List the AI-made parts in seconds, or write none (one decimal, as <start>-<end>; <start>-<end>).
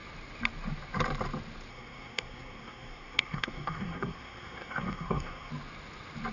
1.7-5.5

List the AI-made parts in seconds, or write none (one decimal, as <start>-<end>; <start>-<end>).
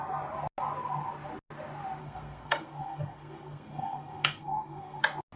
2.0-5.0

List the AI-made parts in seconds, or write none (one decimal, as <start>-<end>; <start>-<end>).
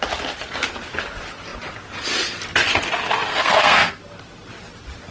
3.3-4.0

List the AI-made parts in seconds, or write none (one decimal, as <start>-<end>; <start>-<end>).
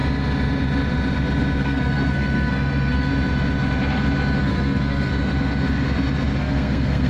1.6-3.1; 4.4-5.1; 6.4-7.1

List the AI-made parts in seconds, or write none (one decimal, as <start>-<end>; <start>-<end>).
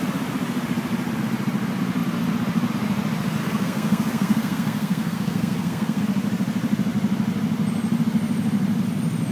3.4-6.0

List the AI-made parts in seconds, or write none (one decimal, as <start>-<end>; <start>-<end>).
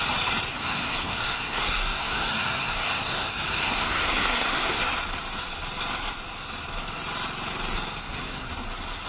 0.5-4.8; 8.0-8.5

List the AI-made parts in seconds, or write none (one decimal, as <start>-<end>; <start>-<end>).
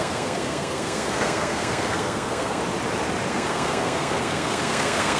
0.0-2.6; 3.3-5.2